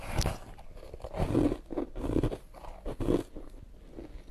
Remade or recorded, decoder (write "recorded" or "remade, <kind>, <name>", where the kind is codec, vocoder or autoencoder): recorded